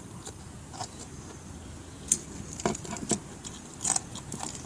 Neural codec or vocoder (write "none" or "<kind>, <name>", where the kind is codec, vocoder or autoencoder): none